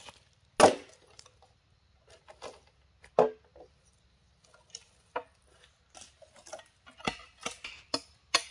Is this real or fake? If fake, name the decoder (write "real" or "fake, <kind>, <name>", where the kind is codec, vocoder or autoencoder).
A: real